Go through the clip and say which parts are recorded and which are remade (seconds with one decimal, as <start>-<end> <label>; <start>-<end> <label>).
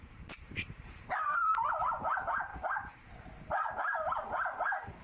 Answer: 0.0-2.5 remade; 2.5-5.0 recorded